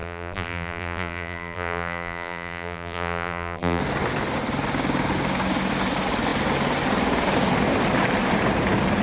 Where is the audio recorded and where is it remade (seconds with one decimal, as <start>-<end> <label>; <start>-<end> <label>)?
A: 0.0-3.8 remade; 3.8-9.0 recorded